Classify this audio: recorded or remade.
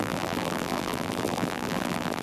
remade